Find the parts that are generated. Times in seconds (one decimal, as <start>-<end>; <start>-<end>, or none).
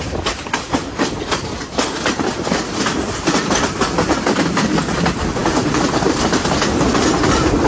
none